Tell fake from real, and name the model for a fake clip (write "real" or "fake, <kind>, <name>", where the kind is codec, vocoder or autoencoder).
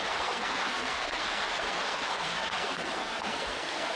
fake, codec, SNAC